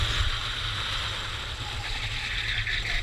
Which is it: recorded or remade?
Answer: recorded